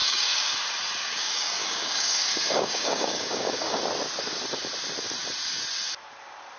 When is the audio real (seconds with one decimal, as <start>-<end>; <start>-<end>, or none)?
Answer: 0.5-1.0; 3.8-6.6